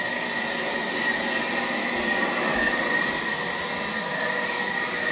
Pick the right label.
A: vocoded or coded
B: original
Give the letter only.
B